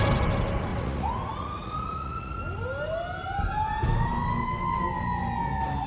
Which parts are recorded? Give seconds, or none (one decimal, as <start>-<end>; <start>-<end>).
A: 0.0-0.7; 2.4-5.9